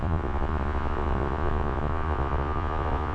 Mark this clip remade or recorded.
remade